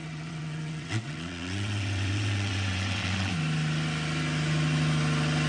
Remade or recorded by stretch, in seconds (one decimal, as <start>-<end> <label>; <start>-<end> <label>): 0.0-3.3 remade; 3.3-5.5 recorded